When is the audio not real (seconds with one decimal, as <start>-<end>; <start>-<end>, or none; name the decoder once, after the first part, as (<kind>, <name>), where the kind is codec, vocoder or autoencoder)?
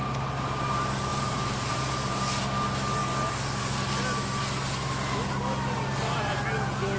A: 1.1-1.8 (vocoder, BigVGAN v2)